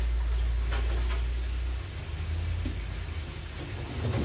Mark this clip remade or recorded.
recorded